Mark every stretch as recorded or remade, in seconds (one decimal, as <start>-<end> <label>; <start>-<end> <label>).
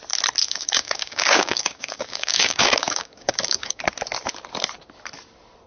0.0-0.4 recorded; 0.4-3.8 remade; 3.8-5.7 recorded